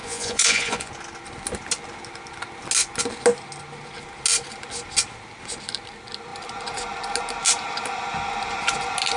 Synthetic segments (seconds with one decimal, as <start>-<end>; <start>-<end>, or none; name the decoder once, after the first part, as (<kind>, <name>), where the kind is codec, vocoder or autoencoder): 0.0-0.9 (vocoder, Vocos)